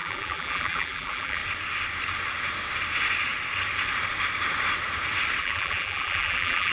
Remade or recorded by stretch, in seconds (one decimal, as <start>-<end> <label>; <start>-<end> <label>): 0.0-1.4 remade; 1.4-5.4 recorded; 5.4-6.7 remade